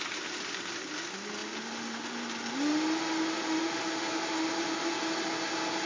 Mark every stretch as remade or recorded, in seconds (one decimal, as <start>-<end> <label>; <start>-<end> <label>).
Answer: 0.0-5.9 recorded